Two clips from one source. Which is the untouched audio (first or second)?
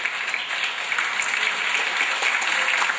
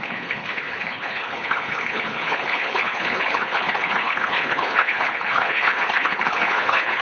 first